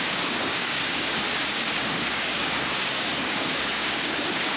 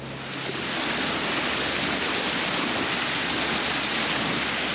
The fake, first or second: first